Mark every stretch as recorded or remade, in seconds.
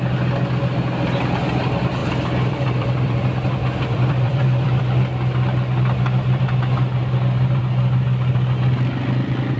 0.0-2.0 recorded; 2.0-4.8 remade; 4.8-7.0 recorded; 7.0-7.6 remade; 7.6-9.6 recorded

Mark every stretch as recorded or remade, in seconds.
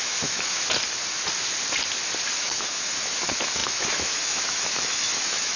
0.0-0.6 remade; 0.6-2.4 recorded; 2.4-5.6 remade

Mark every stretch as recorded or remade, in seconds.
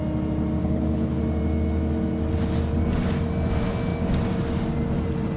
0.0-0.6 recorded; 0.6-1.2 remade; 1.2-5.4 recorded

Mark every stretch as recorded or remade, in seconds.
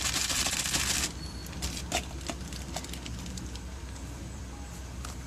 0.0-5.3 recorded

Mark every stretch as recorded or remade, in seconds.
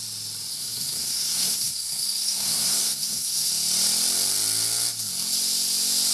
0.0-0.5 recorded; 0.5-3.5 remade; 3.5-6.1 recorded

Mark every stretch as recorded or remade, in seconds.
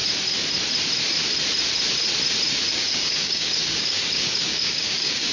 0.0-2.7 recorded; 2.7-5.3 remade